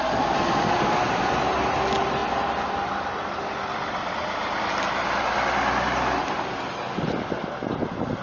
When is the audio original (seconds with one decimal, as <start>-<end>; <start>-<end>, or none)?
0.0-8.2